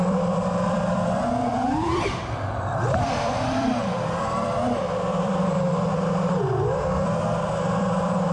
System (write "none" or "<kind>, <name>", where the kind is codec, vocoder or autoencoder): vocoder, BigVGAN v2